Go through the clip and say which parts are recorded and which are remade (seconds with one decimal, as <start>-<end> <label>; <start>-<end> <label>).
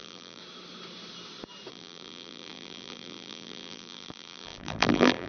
0.0-0.4 remade; 0.4-1.7 recorded; 1.7-5.3 remade